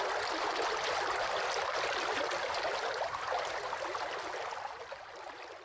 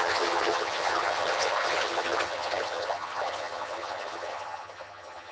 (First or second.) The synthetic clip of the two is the second